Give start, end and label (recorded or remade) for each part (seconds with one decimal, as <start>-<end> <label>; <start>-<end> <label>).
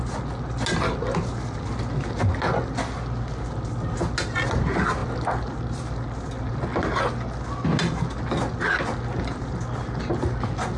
0.0-10.8 recorded